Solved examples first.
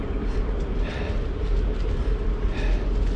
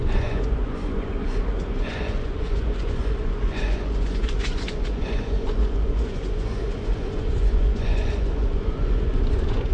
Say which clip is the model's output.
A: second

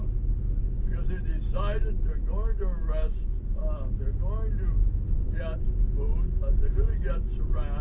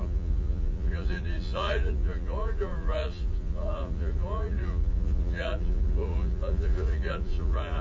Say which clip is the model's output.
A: second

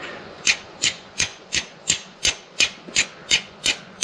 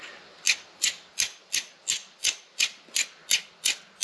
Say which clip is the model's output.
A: first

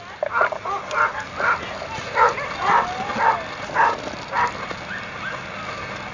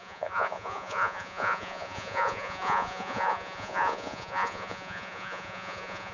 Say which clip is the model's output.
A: second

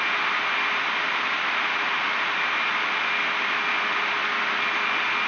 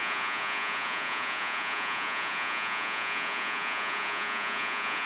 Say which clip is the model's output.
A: second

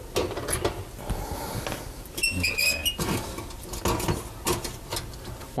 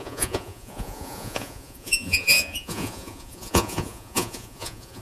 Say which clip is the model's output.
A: second